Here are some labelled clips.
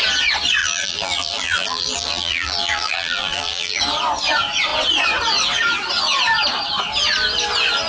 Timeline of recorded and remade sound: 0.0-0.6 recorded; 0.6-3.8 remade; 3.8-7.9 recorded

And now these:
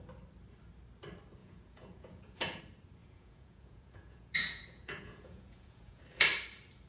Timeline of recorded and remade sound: 0.0-1.4 recorded; 1.4-2.6 remade; 2.6-3.0 recorded; 3.0-6.0 remade; 6.0-6.9 recorded